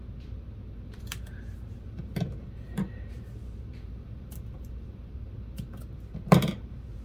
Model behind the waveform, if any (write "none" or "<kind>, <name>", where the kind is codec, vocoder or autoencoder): vocoder, BigVGAN v2